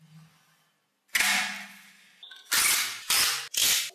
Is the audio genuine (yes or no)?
yes